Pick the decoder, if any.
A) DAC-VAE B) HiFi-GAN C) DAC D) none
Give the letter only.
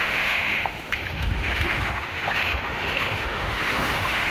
A